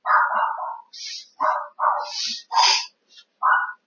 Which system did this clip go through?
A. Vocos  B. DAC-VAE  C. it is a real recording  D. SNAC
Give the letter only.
C